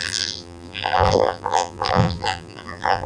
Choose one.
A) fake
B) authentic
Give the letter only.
A